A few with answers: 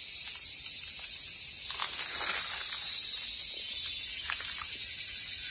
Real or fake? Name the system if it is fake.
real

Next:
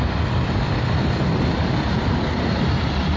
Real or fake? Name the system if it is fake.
real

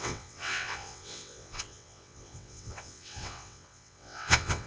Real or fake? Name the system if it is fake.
fake, vocoder, WaveNeXt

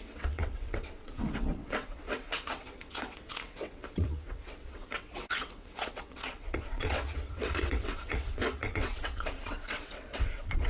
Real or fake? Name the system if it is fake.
fake, vocoder, WaveNeXt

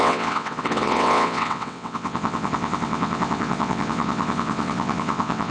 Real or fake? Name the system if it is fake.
fake, vocoder, WaveNeXt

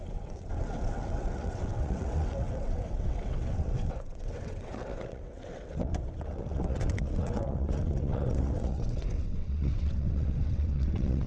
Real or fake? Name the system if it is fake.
fake, vocoder, WaveNeXt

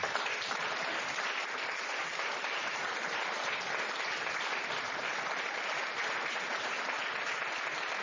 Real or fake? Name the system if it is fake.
real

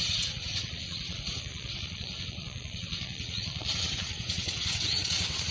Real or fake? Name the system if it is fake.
fake, vocoder, WaveNeXt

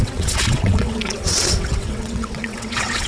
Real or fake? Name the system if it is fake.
fake, vocoder, WaveNeXt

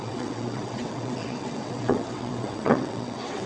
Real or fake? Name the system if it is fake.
fake, vocoder, WaveNeXt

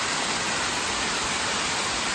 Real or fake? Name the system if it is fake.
real